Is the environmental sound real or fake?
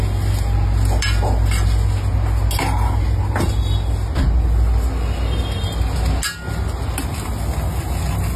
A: real